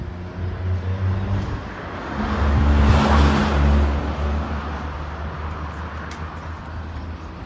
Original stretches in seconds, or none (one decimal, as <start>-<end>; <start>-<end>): 0.0-7.5